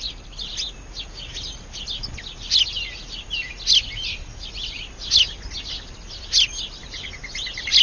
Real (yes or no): yes